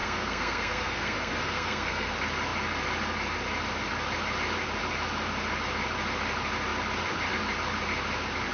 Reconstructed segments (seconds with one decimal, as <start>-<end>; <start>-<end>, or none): 0.0-2.1